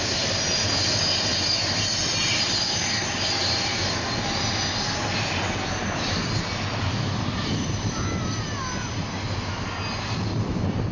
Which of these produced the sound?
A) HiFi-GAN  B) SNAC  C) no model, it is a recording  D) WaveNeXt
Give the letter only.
C